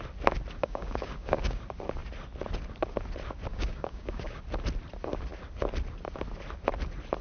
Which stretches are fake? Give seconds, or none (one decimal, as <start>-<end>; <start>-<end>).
0.6-1.6; 3.5-4.4